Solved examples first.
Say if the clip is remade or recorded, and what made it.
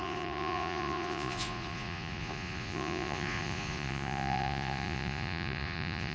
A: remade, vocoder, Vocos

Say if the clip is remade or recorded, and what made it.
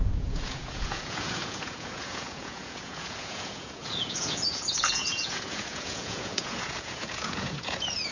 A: remade, vocoder, Vocos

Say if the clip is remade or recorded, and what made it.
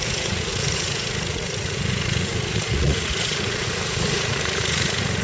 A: remade, vocoder, Vocos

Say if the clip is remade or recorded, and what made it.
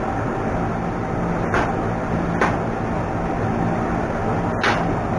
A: recorded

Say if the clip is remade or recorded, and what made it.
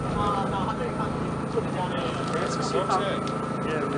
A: recorded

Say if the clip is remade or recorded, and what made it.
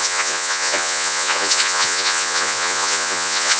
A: remade, vocoder, Vocos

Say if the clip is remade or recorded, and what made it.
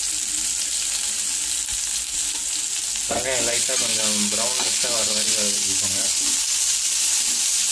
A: recorded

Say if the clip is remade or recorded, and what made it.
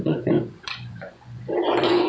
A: remade, vocoder, Vocos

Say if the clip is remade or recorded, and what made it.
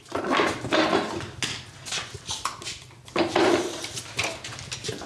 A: recorded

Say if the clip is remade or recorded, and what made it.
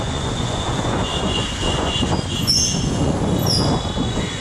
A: remade, vocoder, Vocos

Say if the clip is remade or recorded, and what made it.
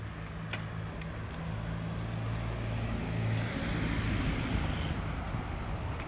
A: recorded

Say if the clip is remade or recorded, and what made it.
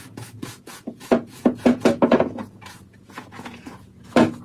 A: remade, vocoder, Vocos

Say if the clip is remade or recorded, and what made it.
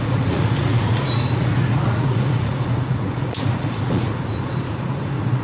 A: remade, vocoder, Vocos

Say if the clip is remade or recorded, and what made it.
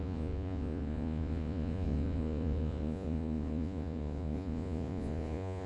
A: remade, vocoder, Vocos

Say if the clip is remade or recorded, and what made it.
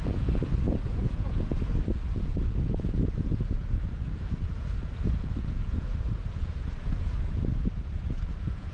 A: remade, vocoder, Vocos